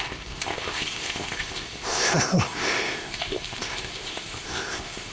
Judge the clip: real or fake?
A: fake